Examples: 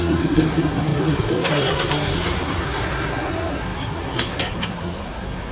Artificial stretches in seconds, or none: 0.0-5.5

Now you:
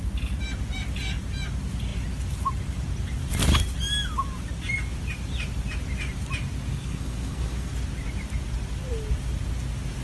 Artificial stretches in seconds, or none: 6.7-7.7

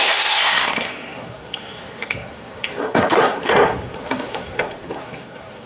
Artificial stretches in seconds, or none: 0.0-5.7

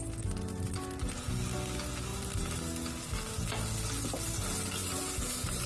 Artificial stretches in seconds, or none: none

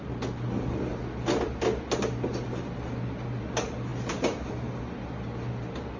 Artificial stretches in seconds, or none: none

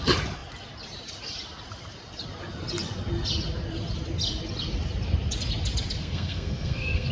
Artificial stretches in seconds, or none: 6.0-7.1

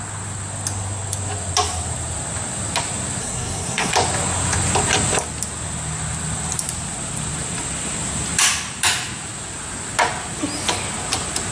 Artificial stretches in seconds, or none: 3.2-3.9